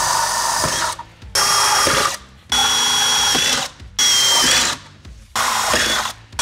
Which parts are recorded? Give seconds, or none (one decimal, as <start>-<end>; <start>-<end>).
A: 0.0-6.4